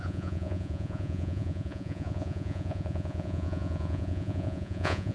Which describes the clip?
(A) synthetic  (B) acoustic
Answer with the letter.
A